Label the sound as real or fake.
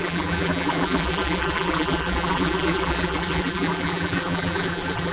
fake